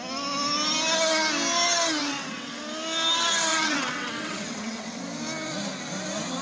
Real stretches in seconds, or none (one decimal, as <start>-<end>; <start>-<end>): 0.0-2.0; 2.6-3.5; 5.0-6.4